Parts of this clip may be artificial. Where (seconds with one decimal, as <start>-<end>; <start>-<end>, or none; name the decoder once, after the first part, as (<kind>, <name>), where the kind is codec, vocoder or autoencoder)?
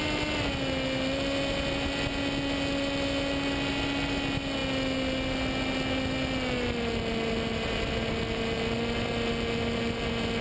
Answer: none